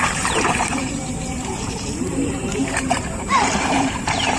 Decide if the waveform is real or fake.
fake